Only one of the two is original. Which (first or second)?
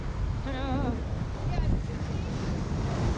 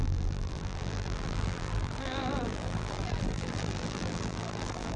first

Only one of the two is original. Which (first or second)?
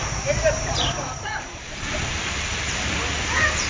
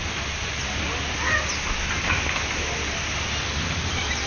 second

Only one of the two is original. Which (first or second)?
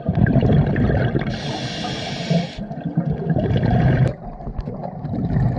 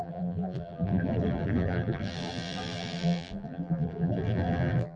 first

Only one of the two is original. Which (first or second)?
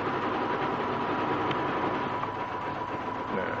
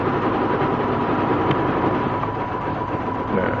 first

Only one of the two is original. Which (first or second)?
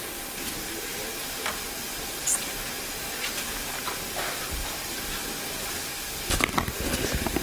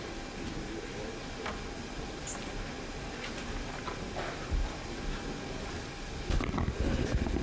second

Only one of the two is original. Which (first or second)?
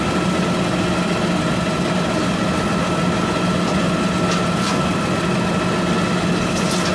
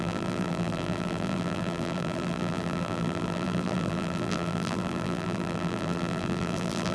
first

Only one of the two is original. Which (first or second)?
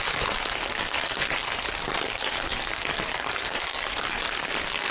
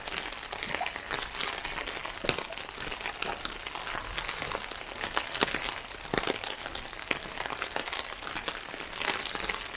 second